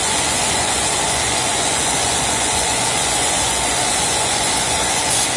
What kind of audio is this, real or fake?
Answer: fake